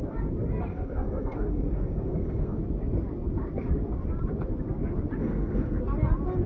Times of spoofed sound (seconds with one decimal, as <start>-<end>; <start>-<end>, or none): 0.7-2.6; 5.2-5.8